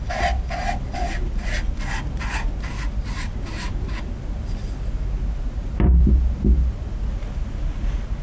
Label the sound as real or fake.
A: real